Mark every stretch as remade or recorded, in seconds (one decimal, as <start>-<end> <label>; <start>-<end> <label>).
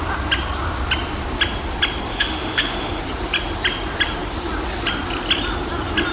0.0-2.1 recorded; 2.1-3.0 remade; 3.0-6.1 recorded